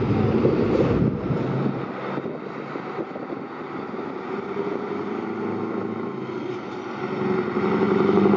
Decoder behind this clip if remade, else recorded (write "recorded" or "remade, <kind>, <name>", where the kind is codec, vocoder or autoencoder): recorded